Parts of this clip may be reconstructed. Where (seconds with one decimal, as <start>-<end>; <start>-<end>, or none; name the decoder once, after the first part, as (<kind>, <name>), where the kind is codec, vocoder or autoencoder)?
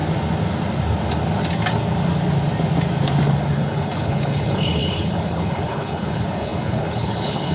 3.4-7.5 (codec, HILCodec)